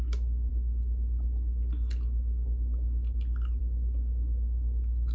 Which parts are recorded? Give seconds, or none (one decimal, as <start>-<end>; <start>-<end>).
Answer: 0.0-5.1